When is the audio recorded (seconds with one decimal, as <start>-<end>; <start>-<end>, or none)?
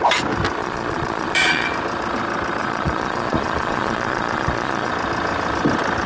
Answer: 0.0-0.6; 1.7-2.6; 4.9-6.1